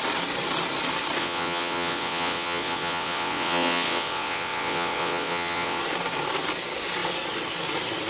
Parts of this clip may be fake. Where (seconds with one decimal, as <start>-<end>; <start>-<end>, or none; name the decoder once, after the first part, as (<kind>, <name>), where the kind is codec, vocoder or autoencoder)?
1.2-5.8 (vocoder, WaveNeXt)